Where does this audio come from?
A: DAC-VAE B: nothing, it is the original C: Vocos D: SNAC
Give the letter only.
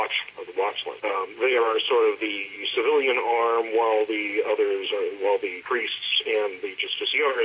B